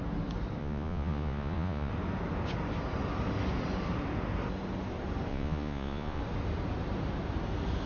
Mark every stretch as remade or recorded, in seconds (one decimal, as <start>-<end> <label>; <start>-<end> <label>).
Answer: 0.0-0.6 recorded; 0.6-1.9 remade; 1.9-5.3 recorded; 5.3-6.2 remade; 6.2-7.9 recorded